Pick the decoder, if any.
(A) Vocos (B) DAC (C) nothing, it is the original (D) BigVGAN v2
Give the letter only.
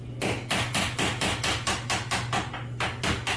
C